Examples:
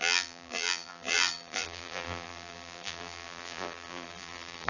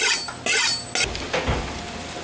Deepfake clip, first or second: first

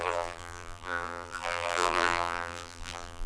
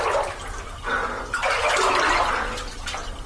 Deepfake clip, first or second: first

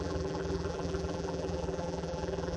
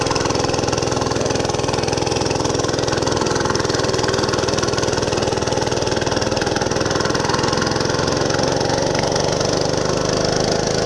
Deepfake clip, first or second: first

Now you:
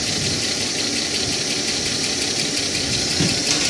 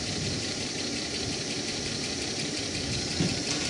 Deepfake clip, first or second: second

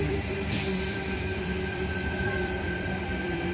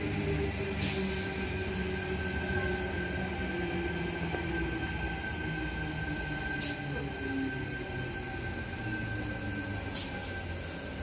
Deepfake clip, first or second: first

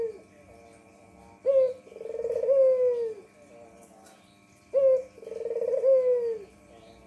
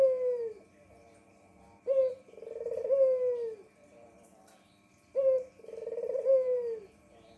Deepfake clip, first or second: second